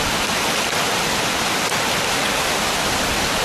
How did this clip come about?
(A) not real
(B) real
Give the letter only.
B